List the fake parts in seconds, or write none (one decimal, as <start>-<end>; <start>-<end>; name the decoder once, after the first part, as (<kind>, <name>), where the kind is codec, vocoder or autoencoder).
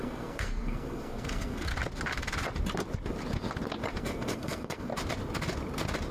0.0-1.7 (codec, SNAC); 3.9-4.9